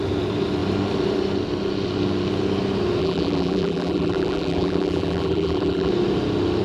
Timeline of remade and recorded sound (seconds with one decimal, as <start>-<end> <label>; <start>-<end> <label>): 0.0-3.0 recorded; 3.0-5.9 remade; 5.9-6.6 recorded